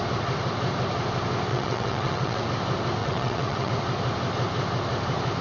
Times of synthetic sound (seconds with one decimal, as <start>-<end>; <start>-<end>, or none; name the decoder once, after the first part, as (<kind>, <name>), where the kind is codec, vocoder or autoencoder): 1.5-2.4 (vocoder, WaveNeXt); 3.0-3.7